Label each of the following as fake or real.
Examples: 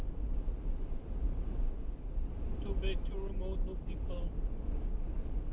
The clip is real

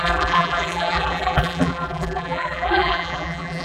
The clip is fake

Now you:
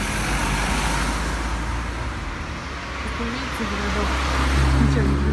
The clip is real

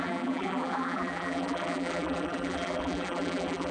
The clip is fake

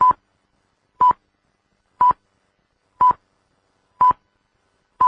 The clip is fake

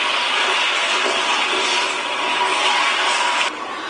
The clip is real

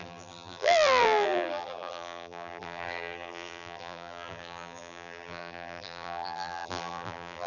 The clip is fake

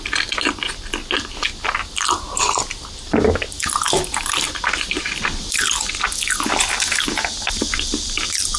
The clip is real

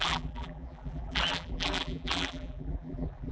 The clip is fake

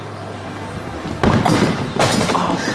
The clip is fake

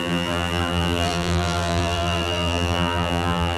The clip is fake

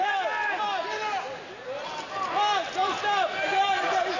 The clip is real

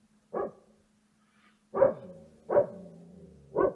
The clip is real